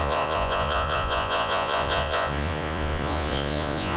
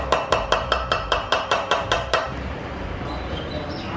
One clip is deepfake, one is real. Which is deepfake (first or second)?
first